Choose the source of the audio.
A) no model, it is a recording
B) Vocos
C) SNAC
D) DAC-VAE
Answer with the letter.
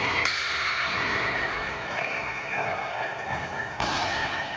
C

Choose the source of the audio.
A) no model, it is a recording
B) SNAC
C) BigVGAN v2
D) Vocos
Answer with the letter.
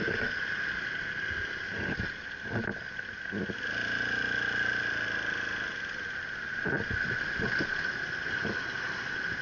A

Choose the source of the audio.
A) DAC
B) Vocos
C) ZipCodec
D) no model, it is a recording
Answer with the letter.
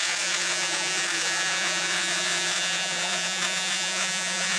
B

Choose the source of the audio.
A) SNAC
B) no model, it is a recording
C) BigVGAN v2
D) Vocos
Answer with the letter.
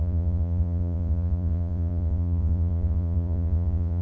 D